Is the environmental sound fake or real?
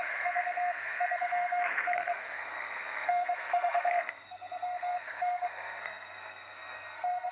fake